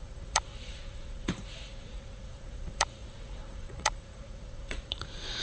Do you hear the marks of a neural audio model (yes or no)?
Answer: yes